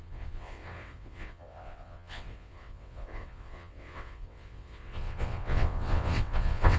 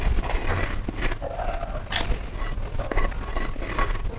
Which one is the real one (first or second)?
second